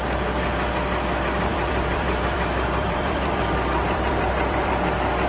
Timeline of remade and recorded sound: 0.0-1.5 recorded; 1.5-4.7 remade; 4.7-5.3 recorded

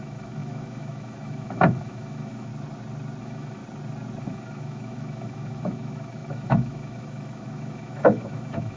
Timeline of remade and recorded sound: 0.0-2.5 remade; 2.5-3.2 recorded; 3.2-3.6 remade; 3.6-4.2 recorded; 4.2-8.8 remade

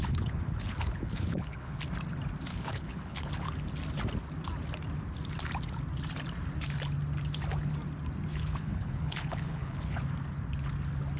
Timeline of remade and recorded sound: 0.0-1.8 remade; 1.8-2.5 recorded; 2.5-3.5 remade; 3.5-8.3 recorded; 8.3-10.0 remade; 10.0-11.2 recorded

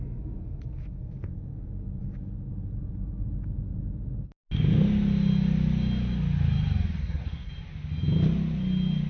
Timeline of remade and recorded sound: 0.0-7.0 recorded; 7.0-7.5 remade; 7.5-9.1 recorded

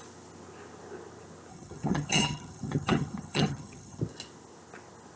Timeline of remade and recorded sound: 0.0-1.5 recorded; 1.5-4.0 remade; 4.0-5.2 recorded

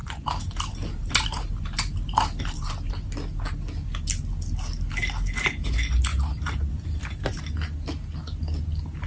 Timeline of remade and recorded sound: 0.0-2.9 remade; 2.9-6.1 recorded; 6.1-7.4 remade; 7.4-9.1 recorded

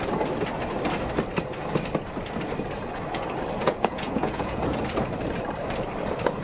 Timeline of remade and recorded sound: 0.0-3.6 recorded; 3.6-4.6 remade; 4.6-6.4 recorded

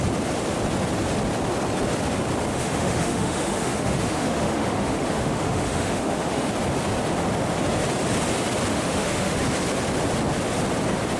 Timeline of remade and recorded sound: 0.0-2.5 recorded; 2.5-6.5 remade; 6.5-8.7 recorded; 8.7-9.4 remade; 9.4-11.2 recorded